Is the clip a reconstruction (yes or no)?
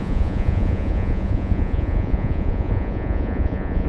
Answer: yes